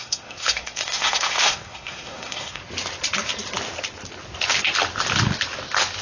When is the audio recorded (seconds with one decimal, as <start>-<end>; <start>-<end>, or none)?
2.6-6.0